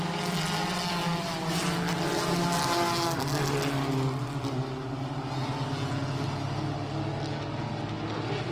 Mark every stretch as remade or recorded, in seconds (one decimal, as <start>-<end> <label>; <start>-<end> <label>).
0.0-8.5 recorded